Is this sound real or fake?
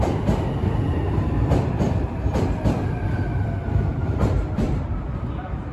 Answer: fake